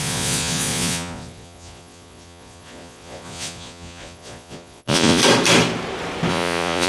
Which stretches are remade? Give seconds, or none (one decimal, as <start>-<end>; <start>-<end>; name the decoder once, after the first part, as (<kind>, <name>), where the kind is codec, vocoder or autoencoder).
0.0-5.2 (vocoder, Vocos); 6.3-6.9